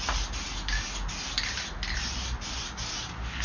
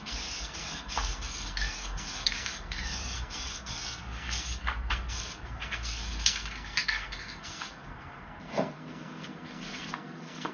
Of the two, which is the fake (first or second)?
second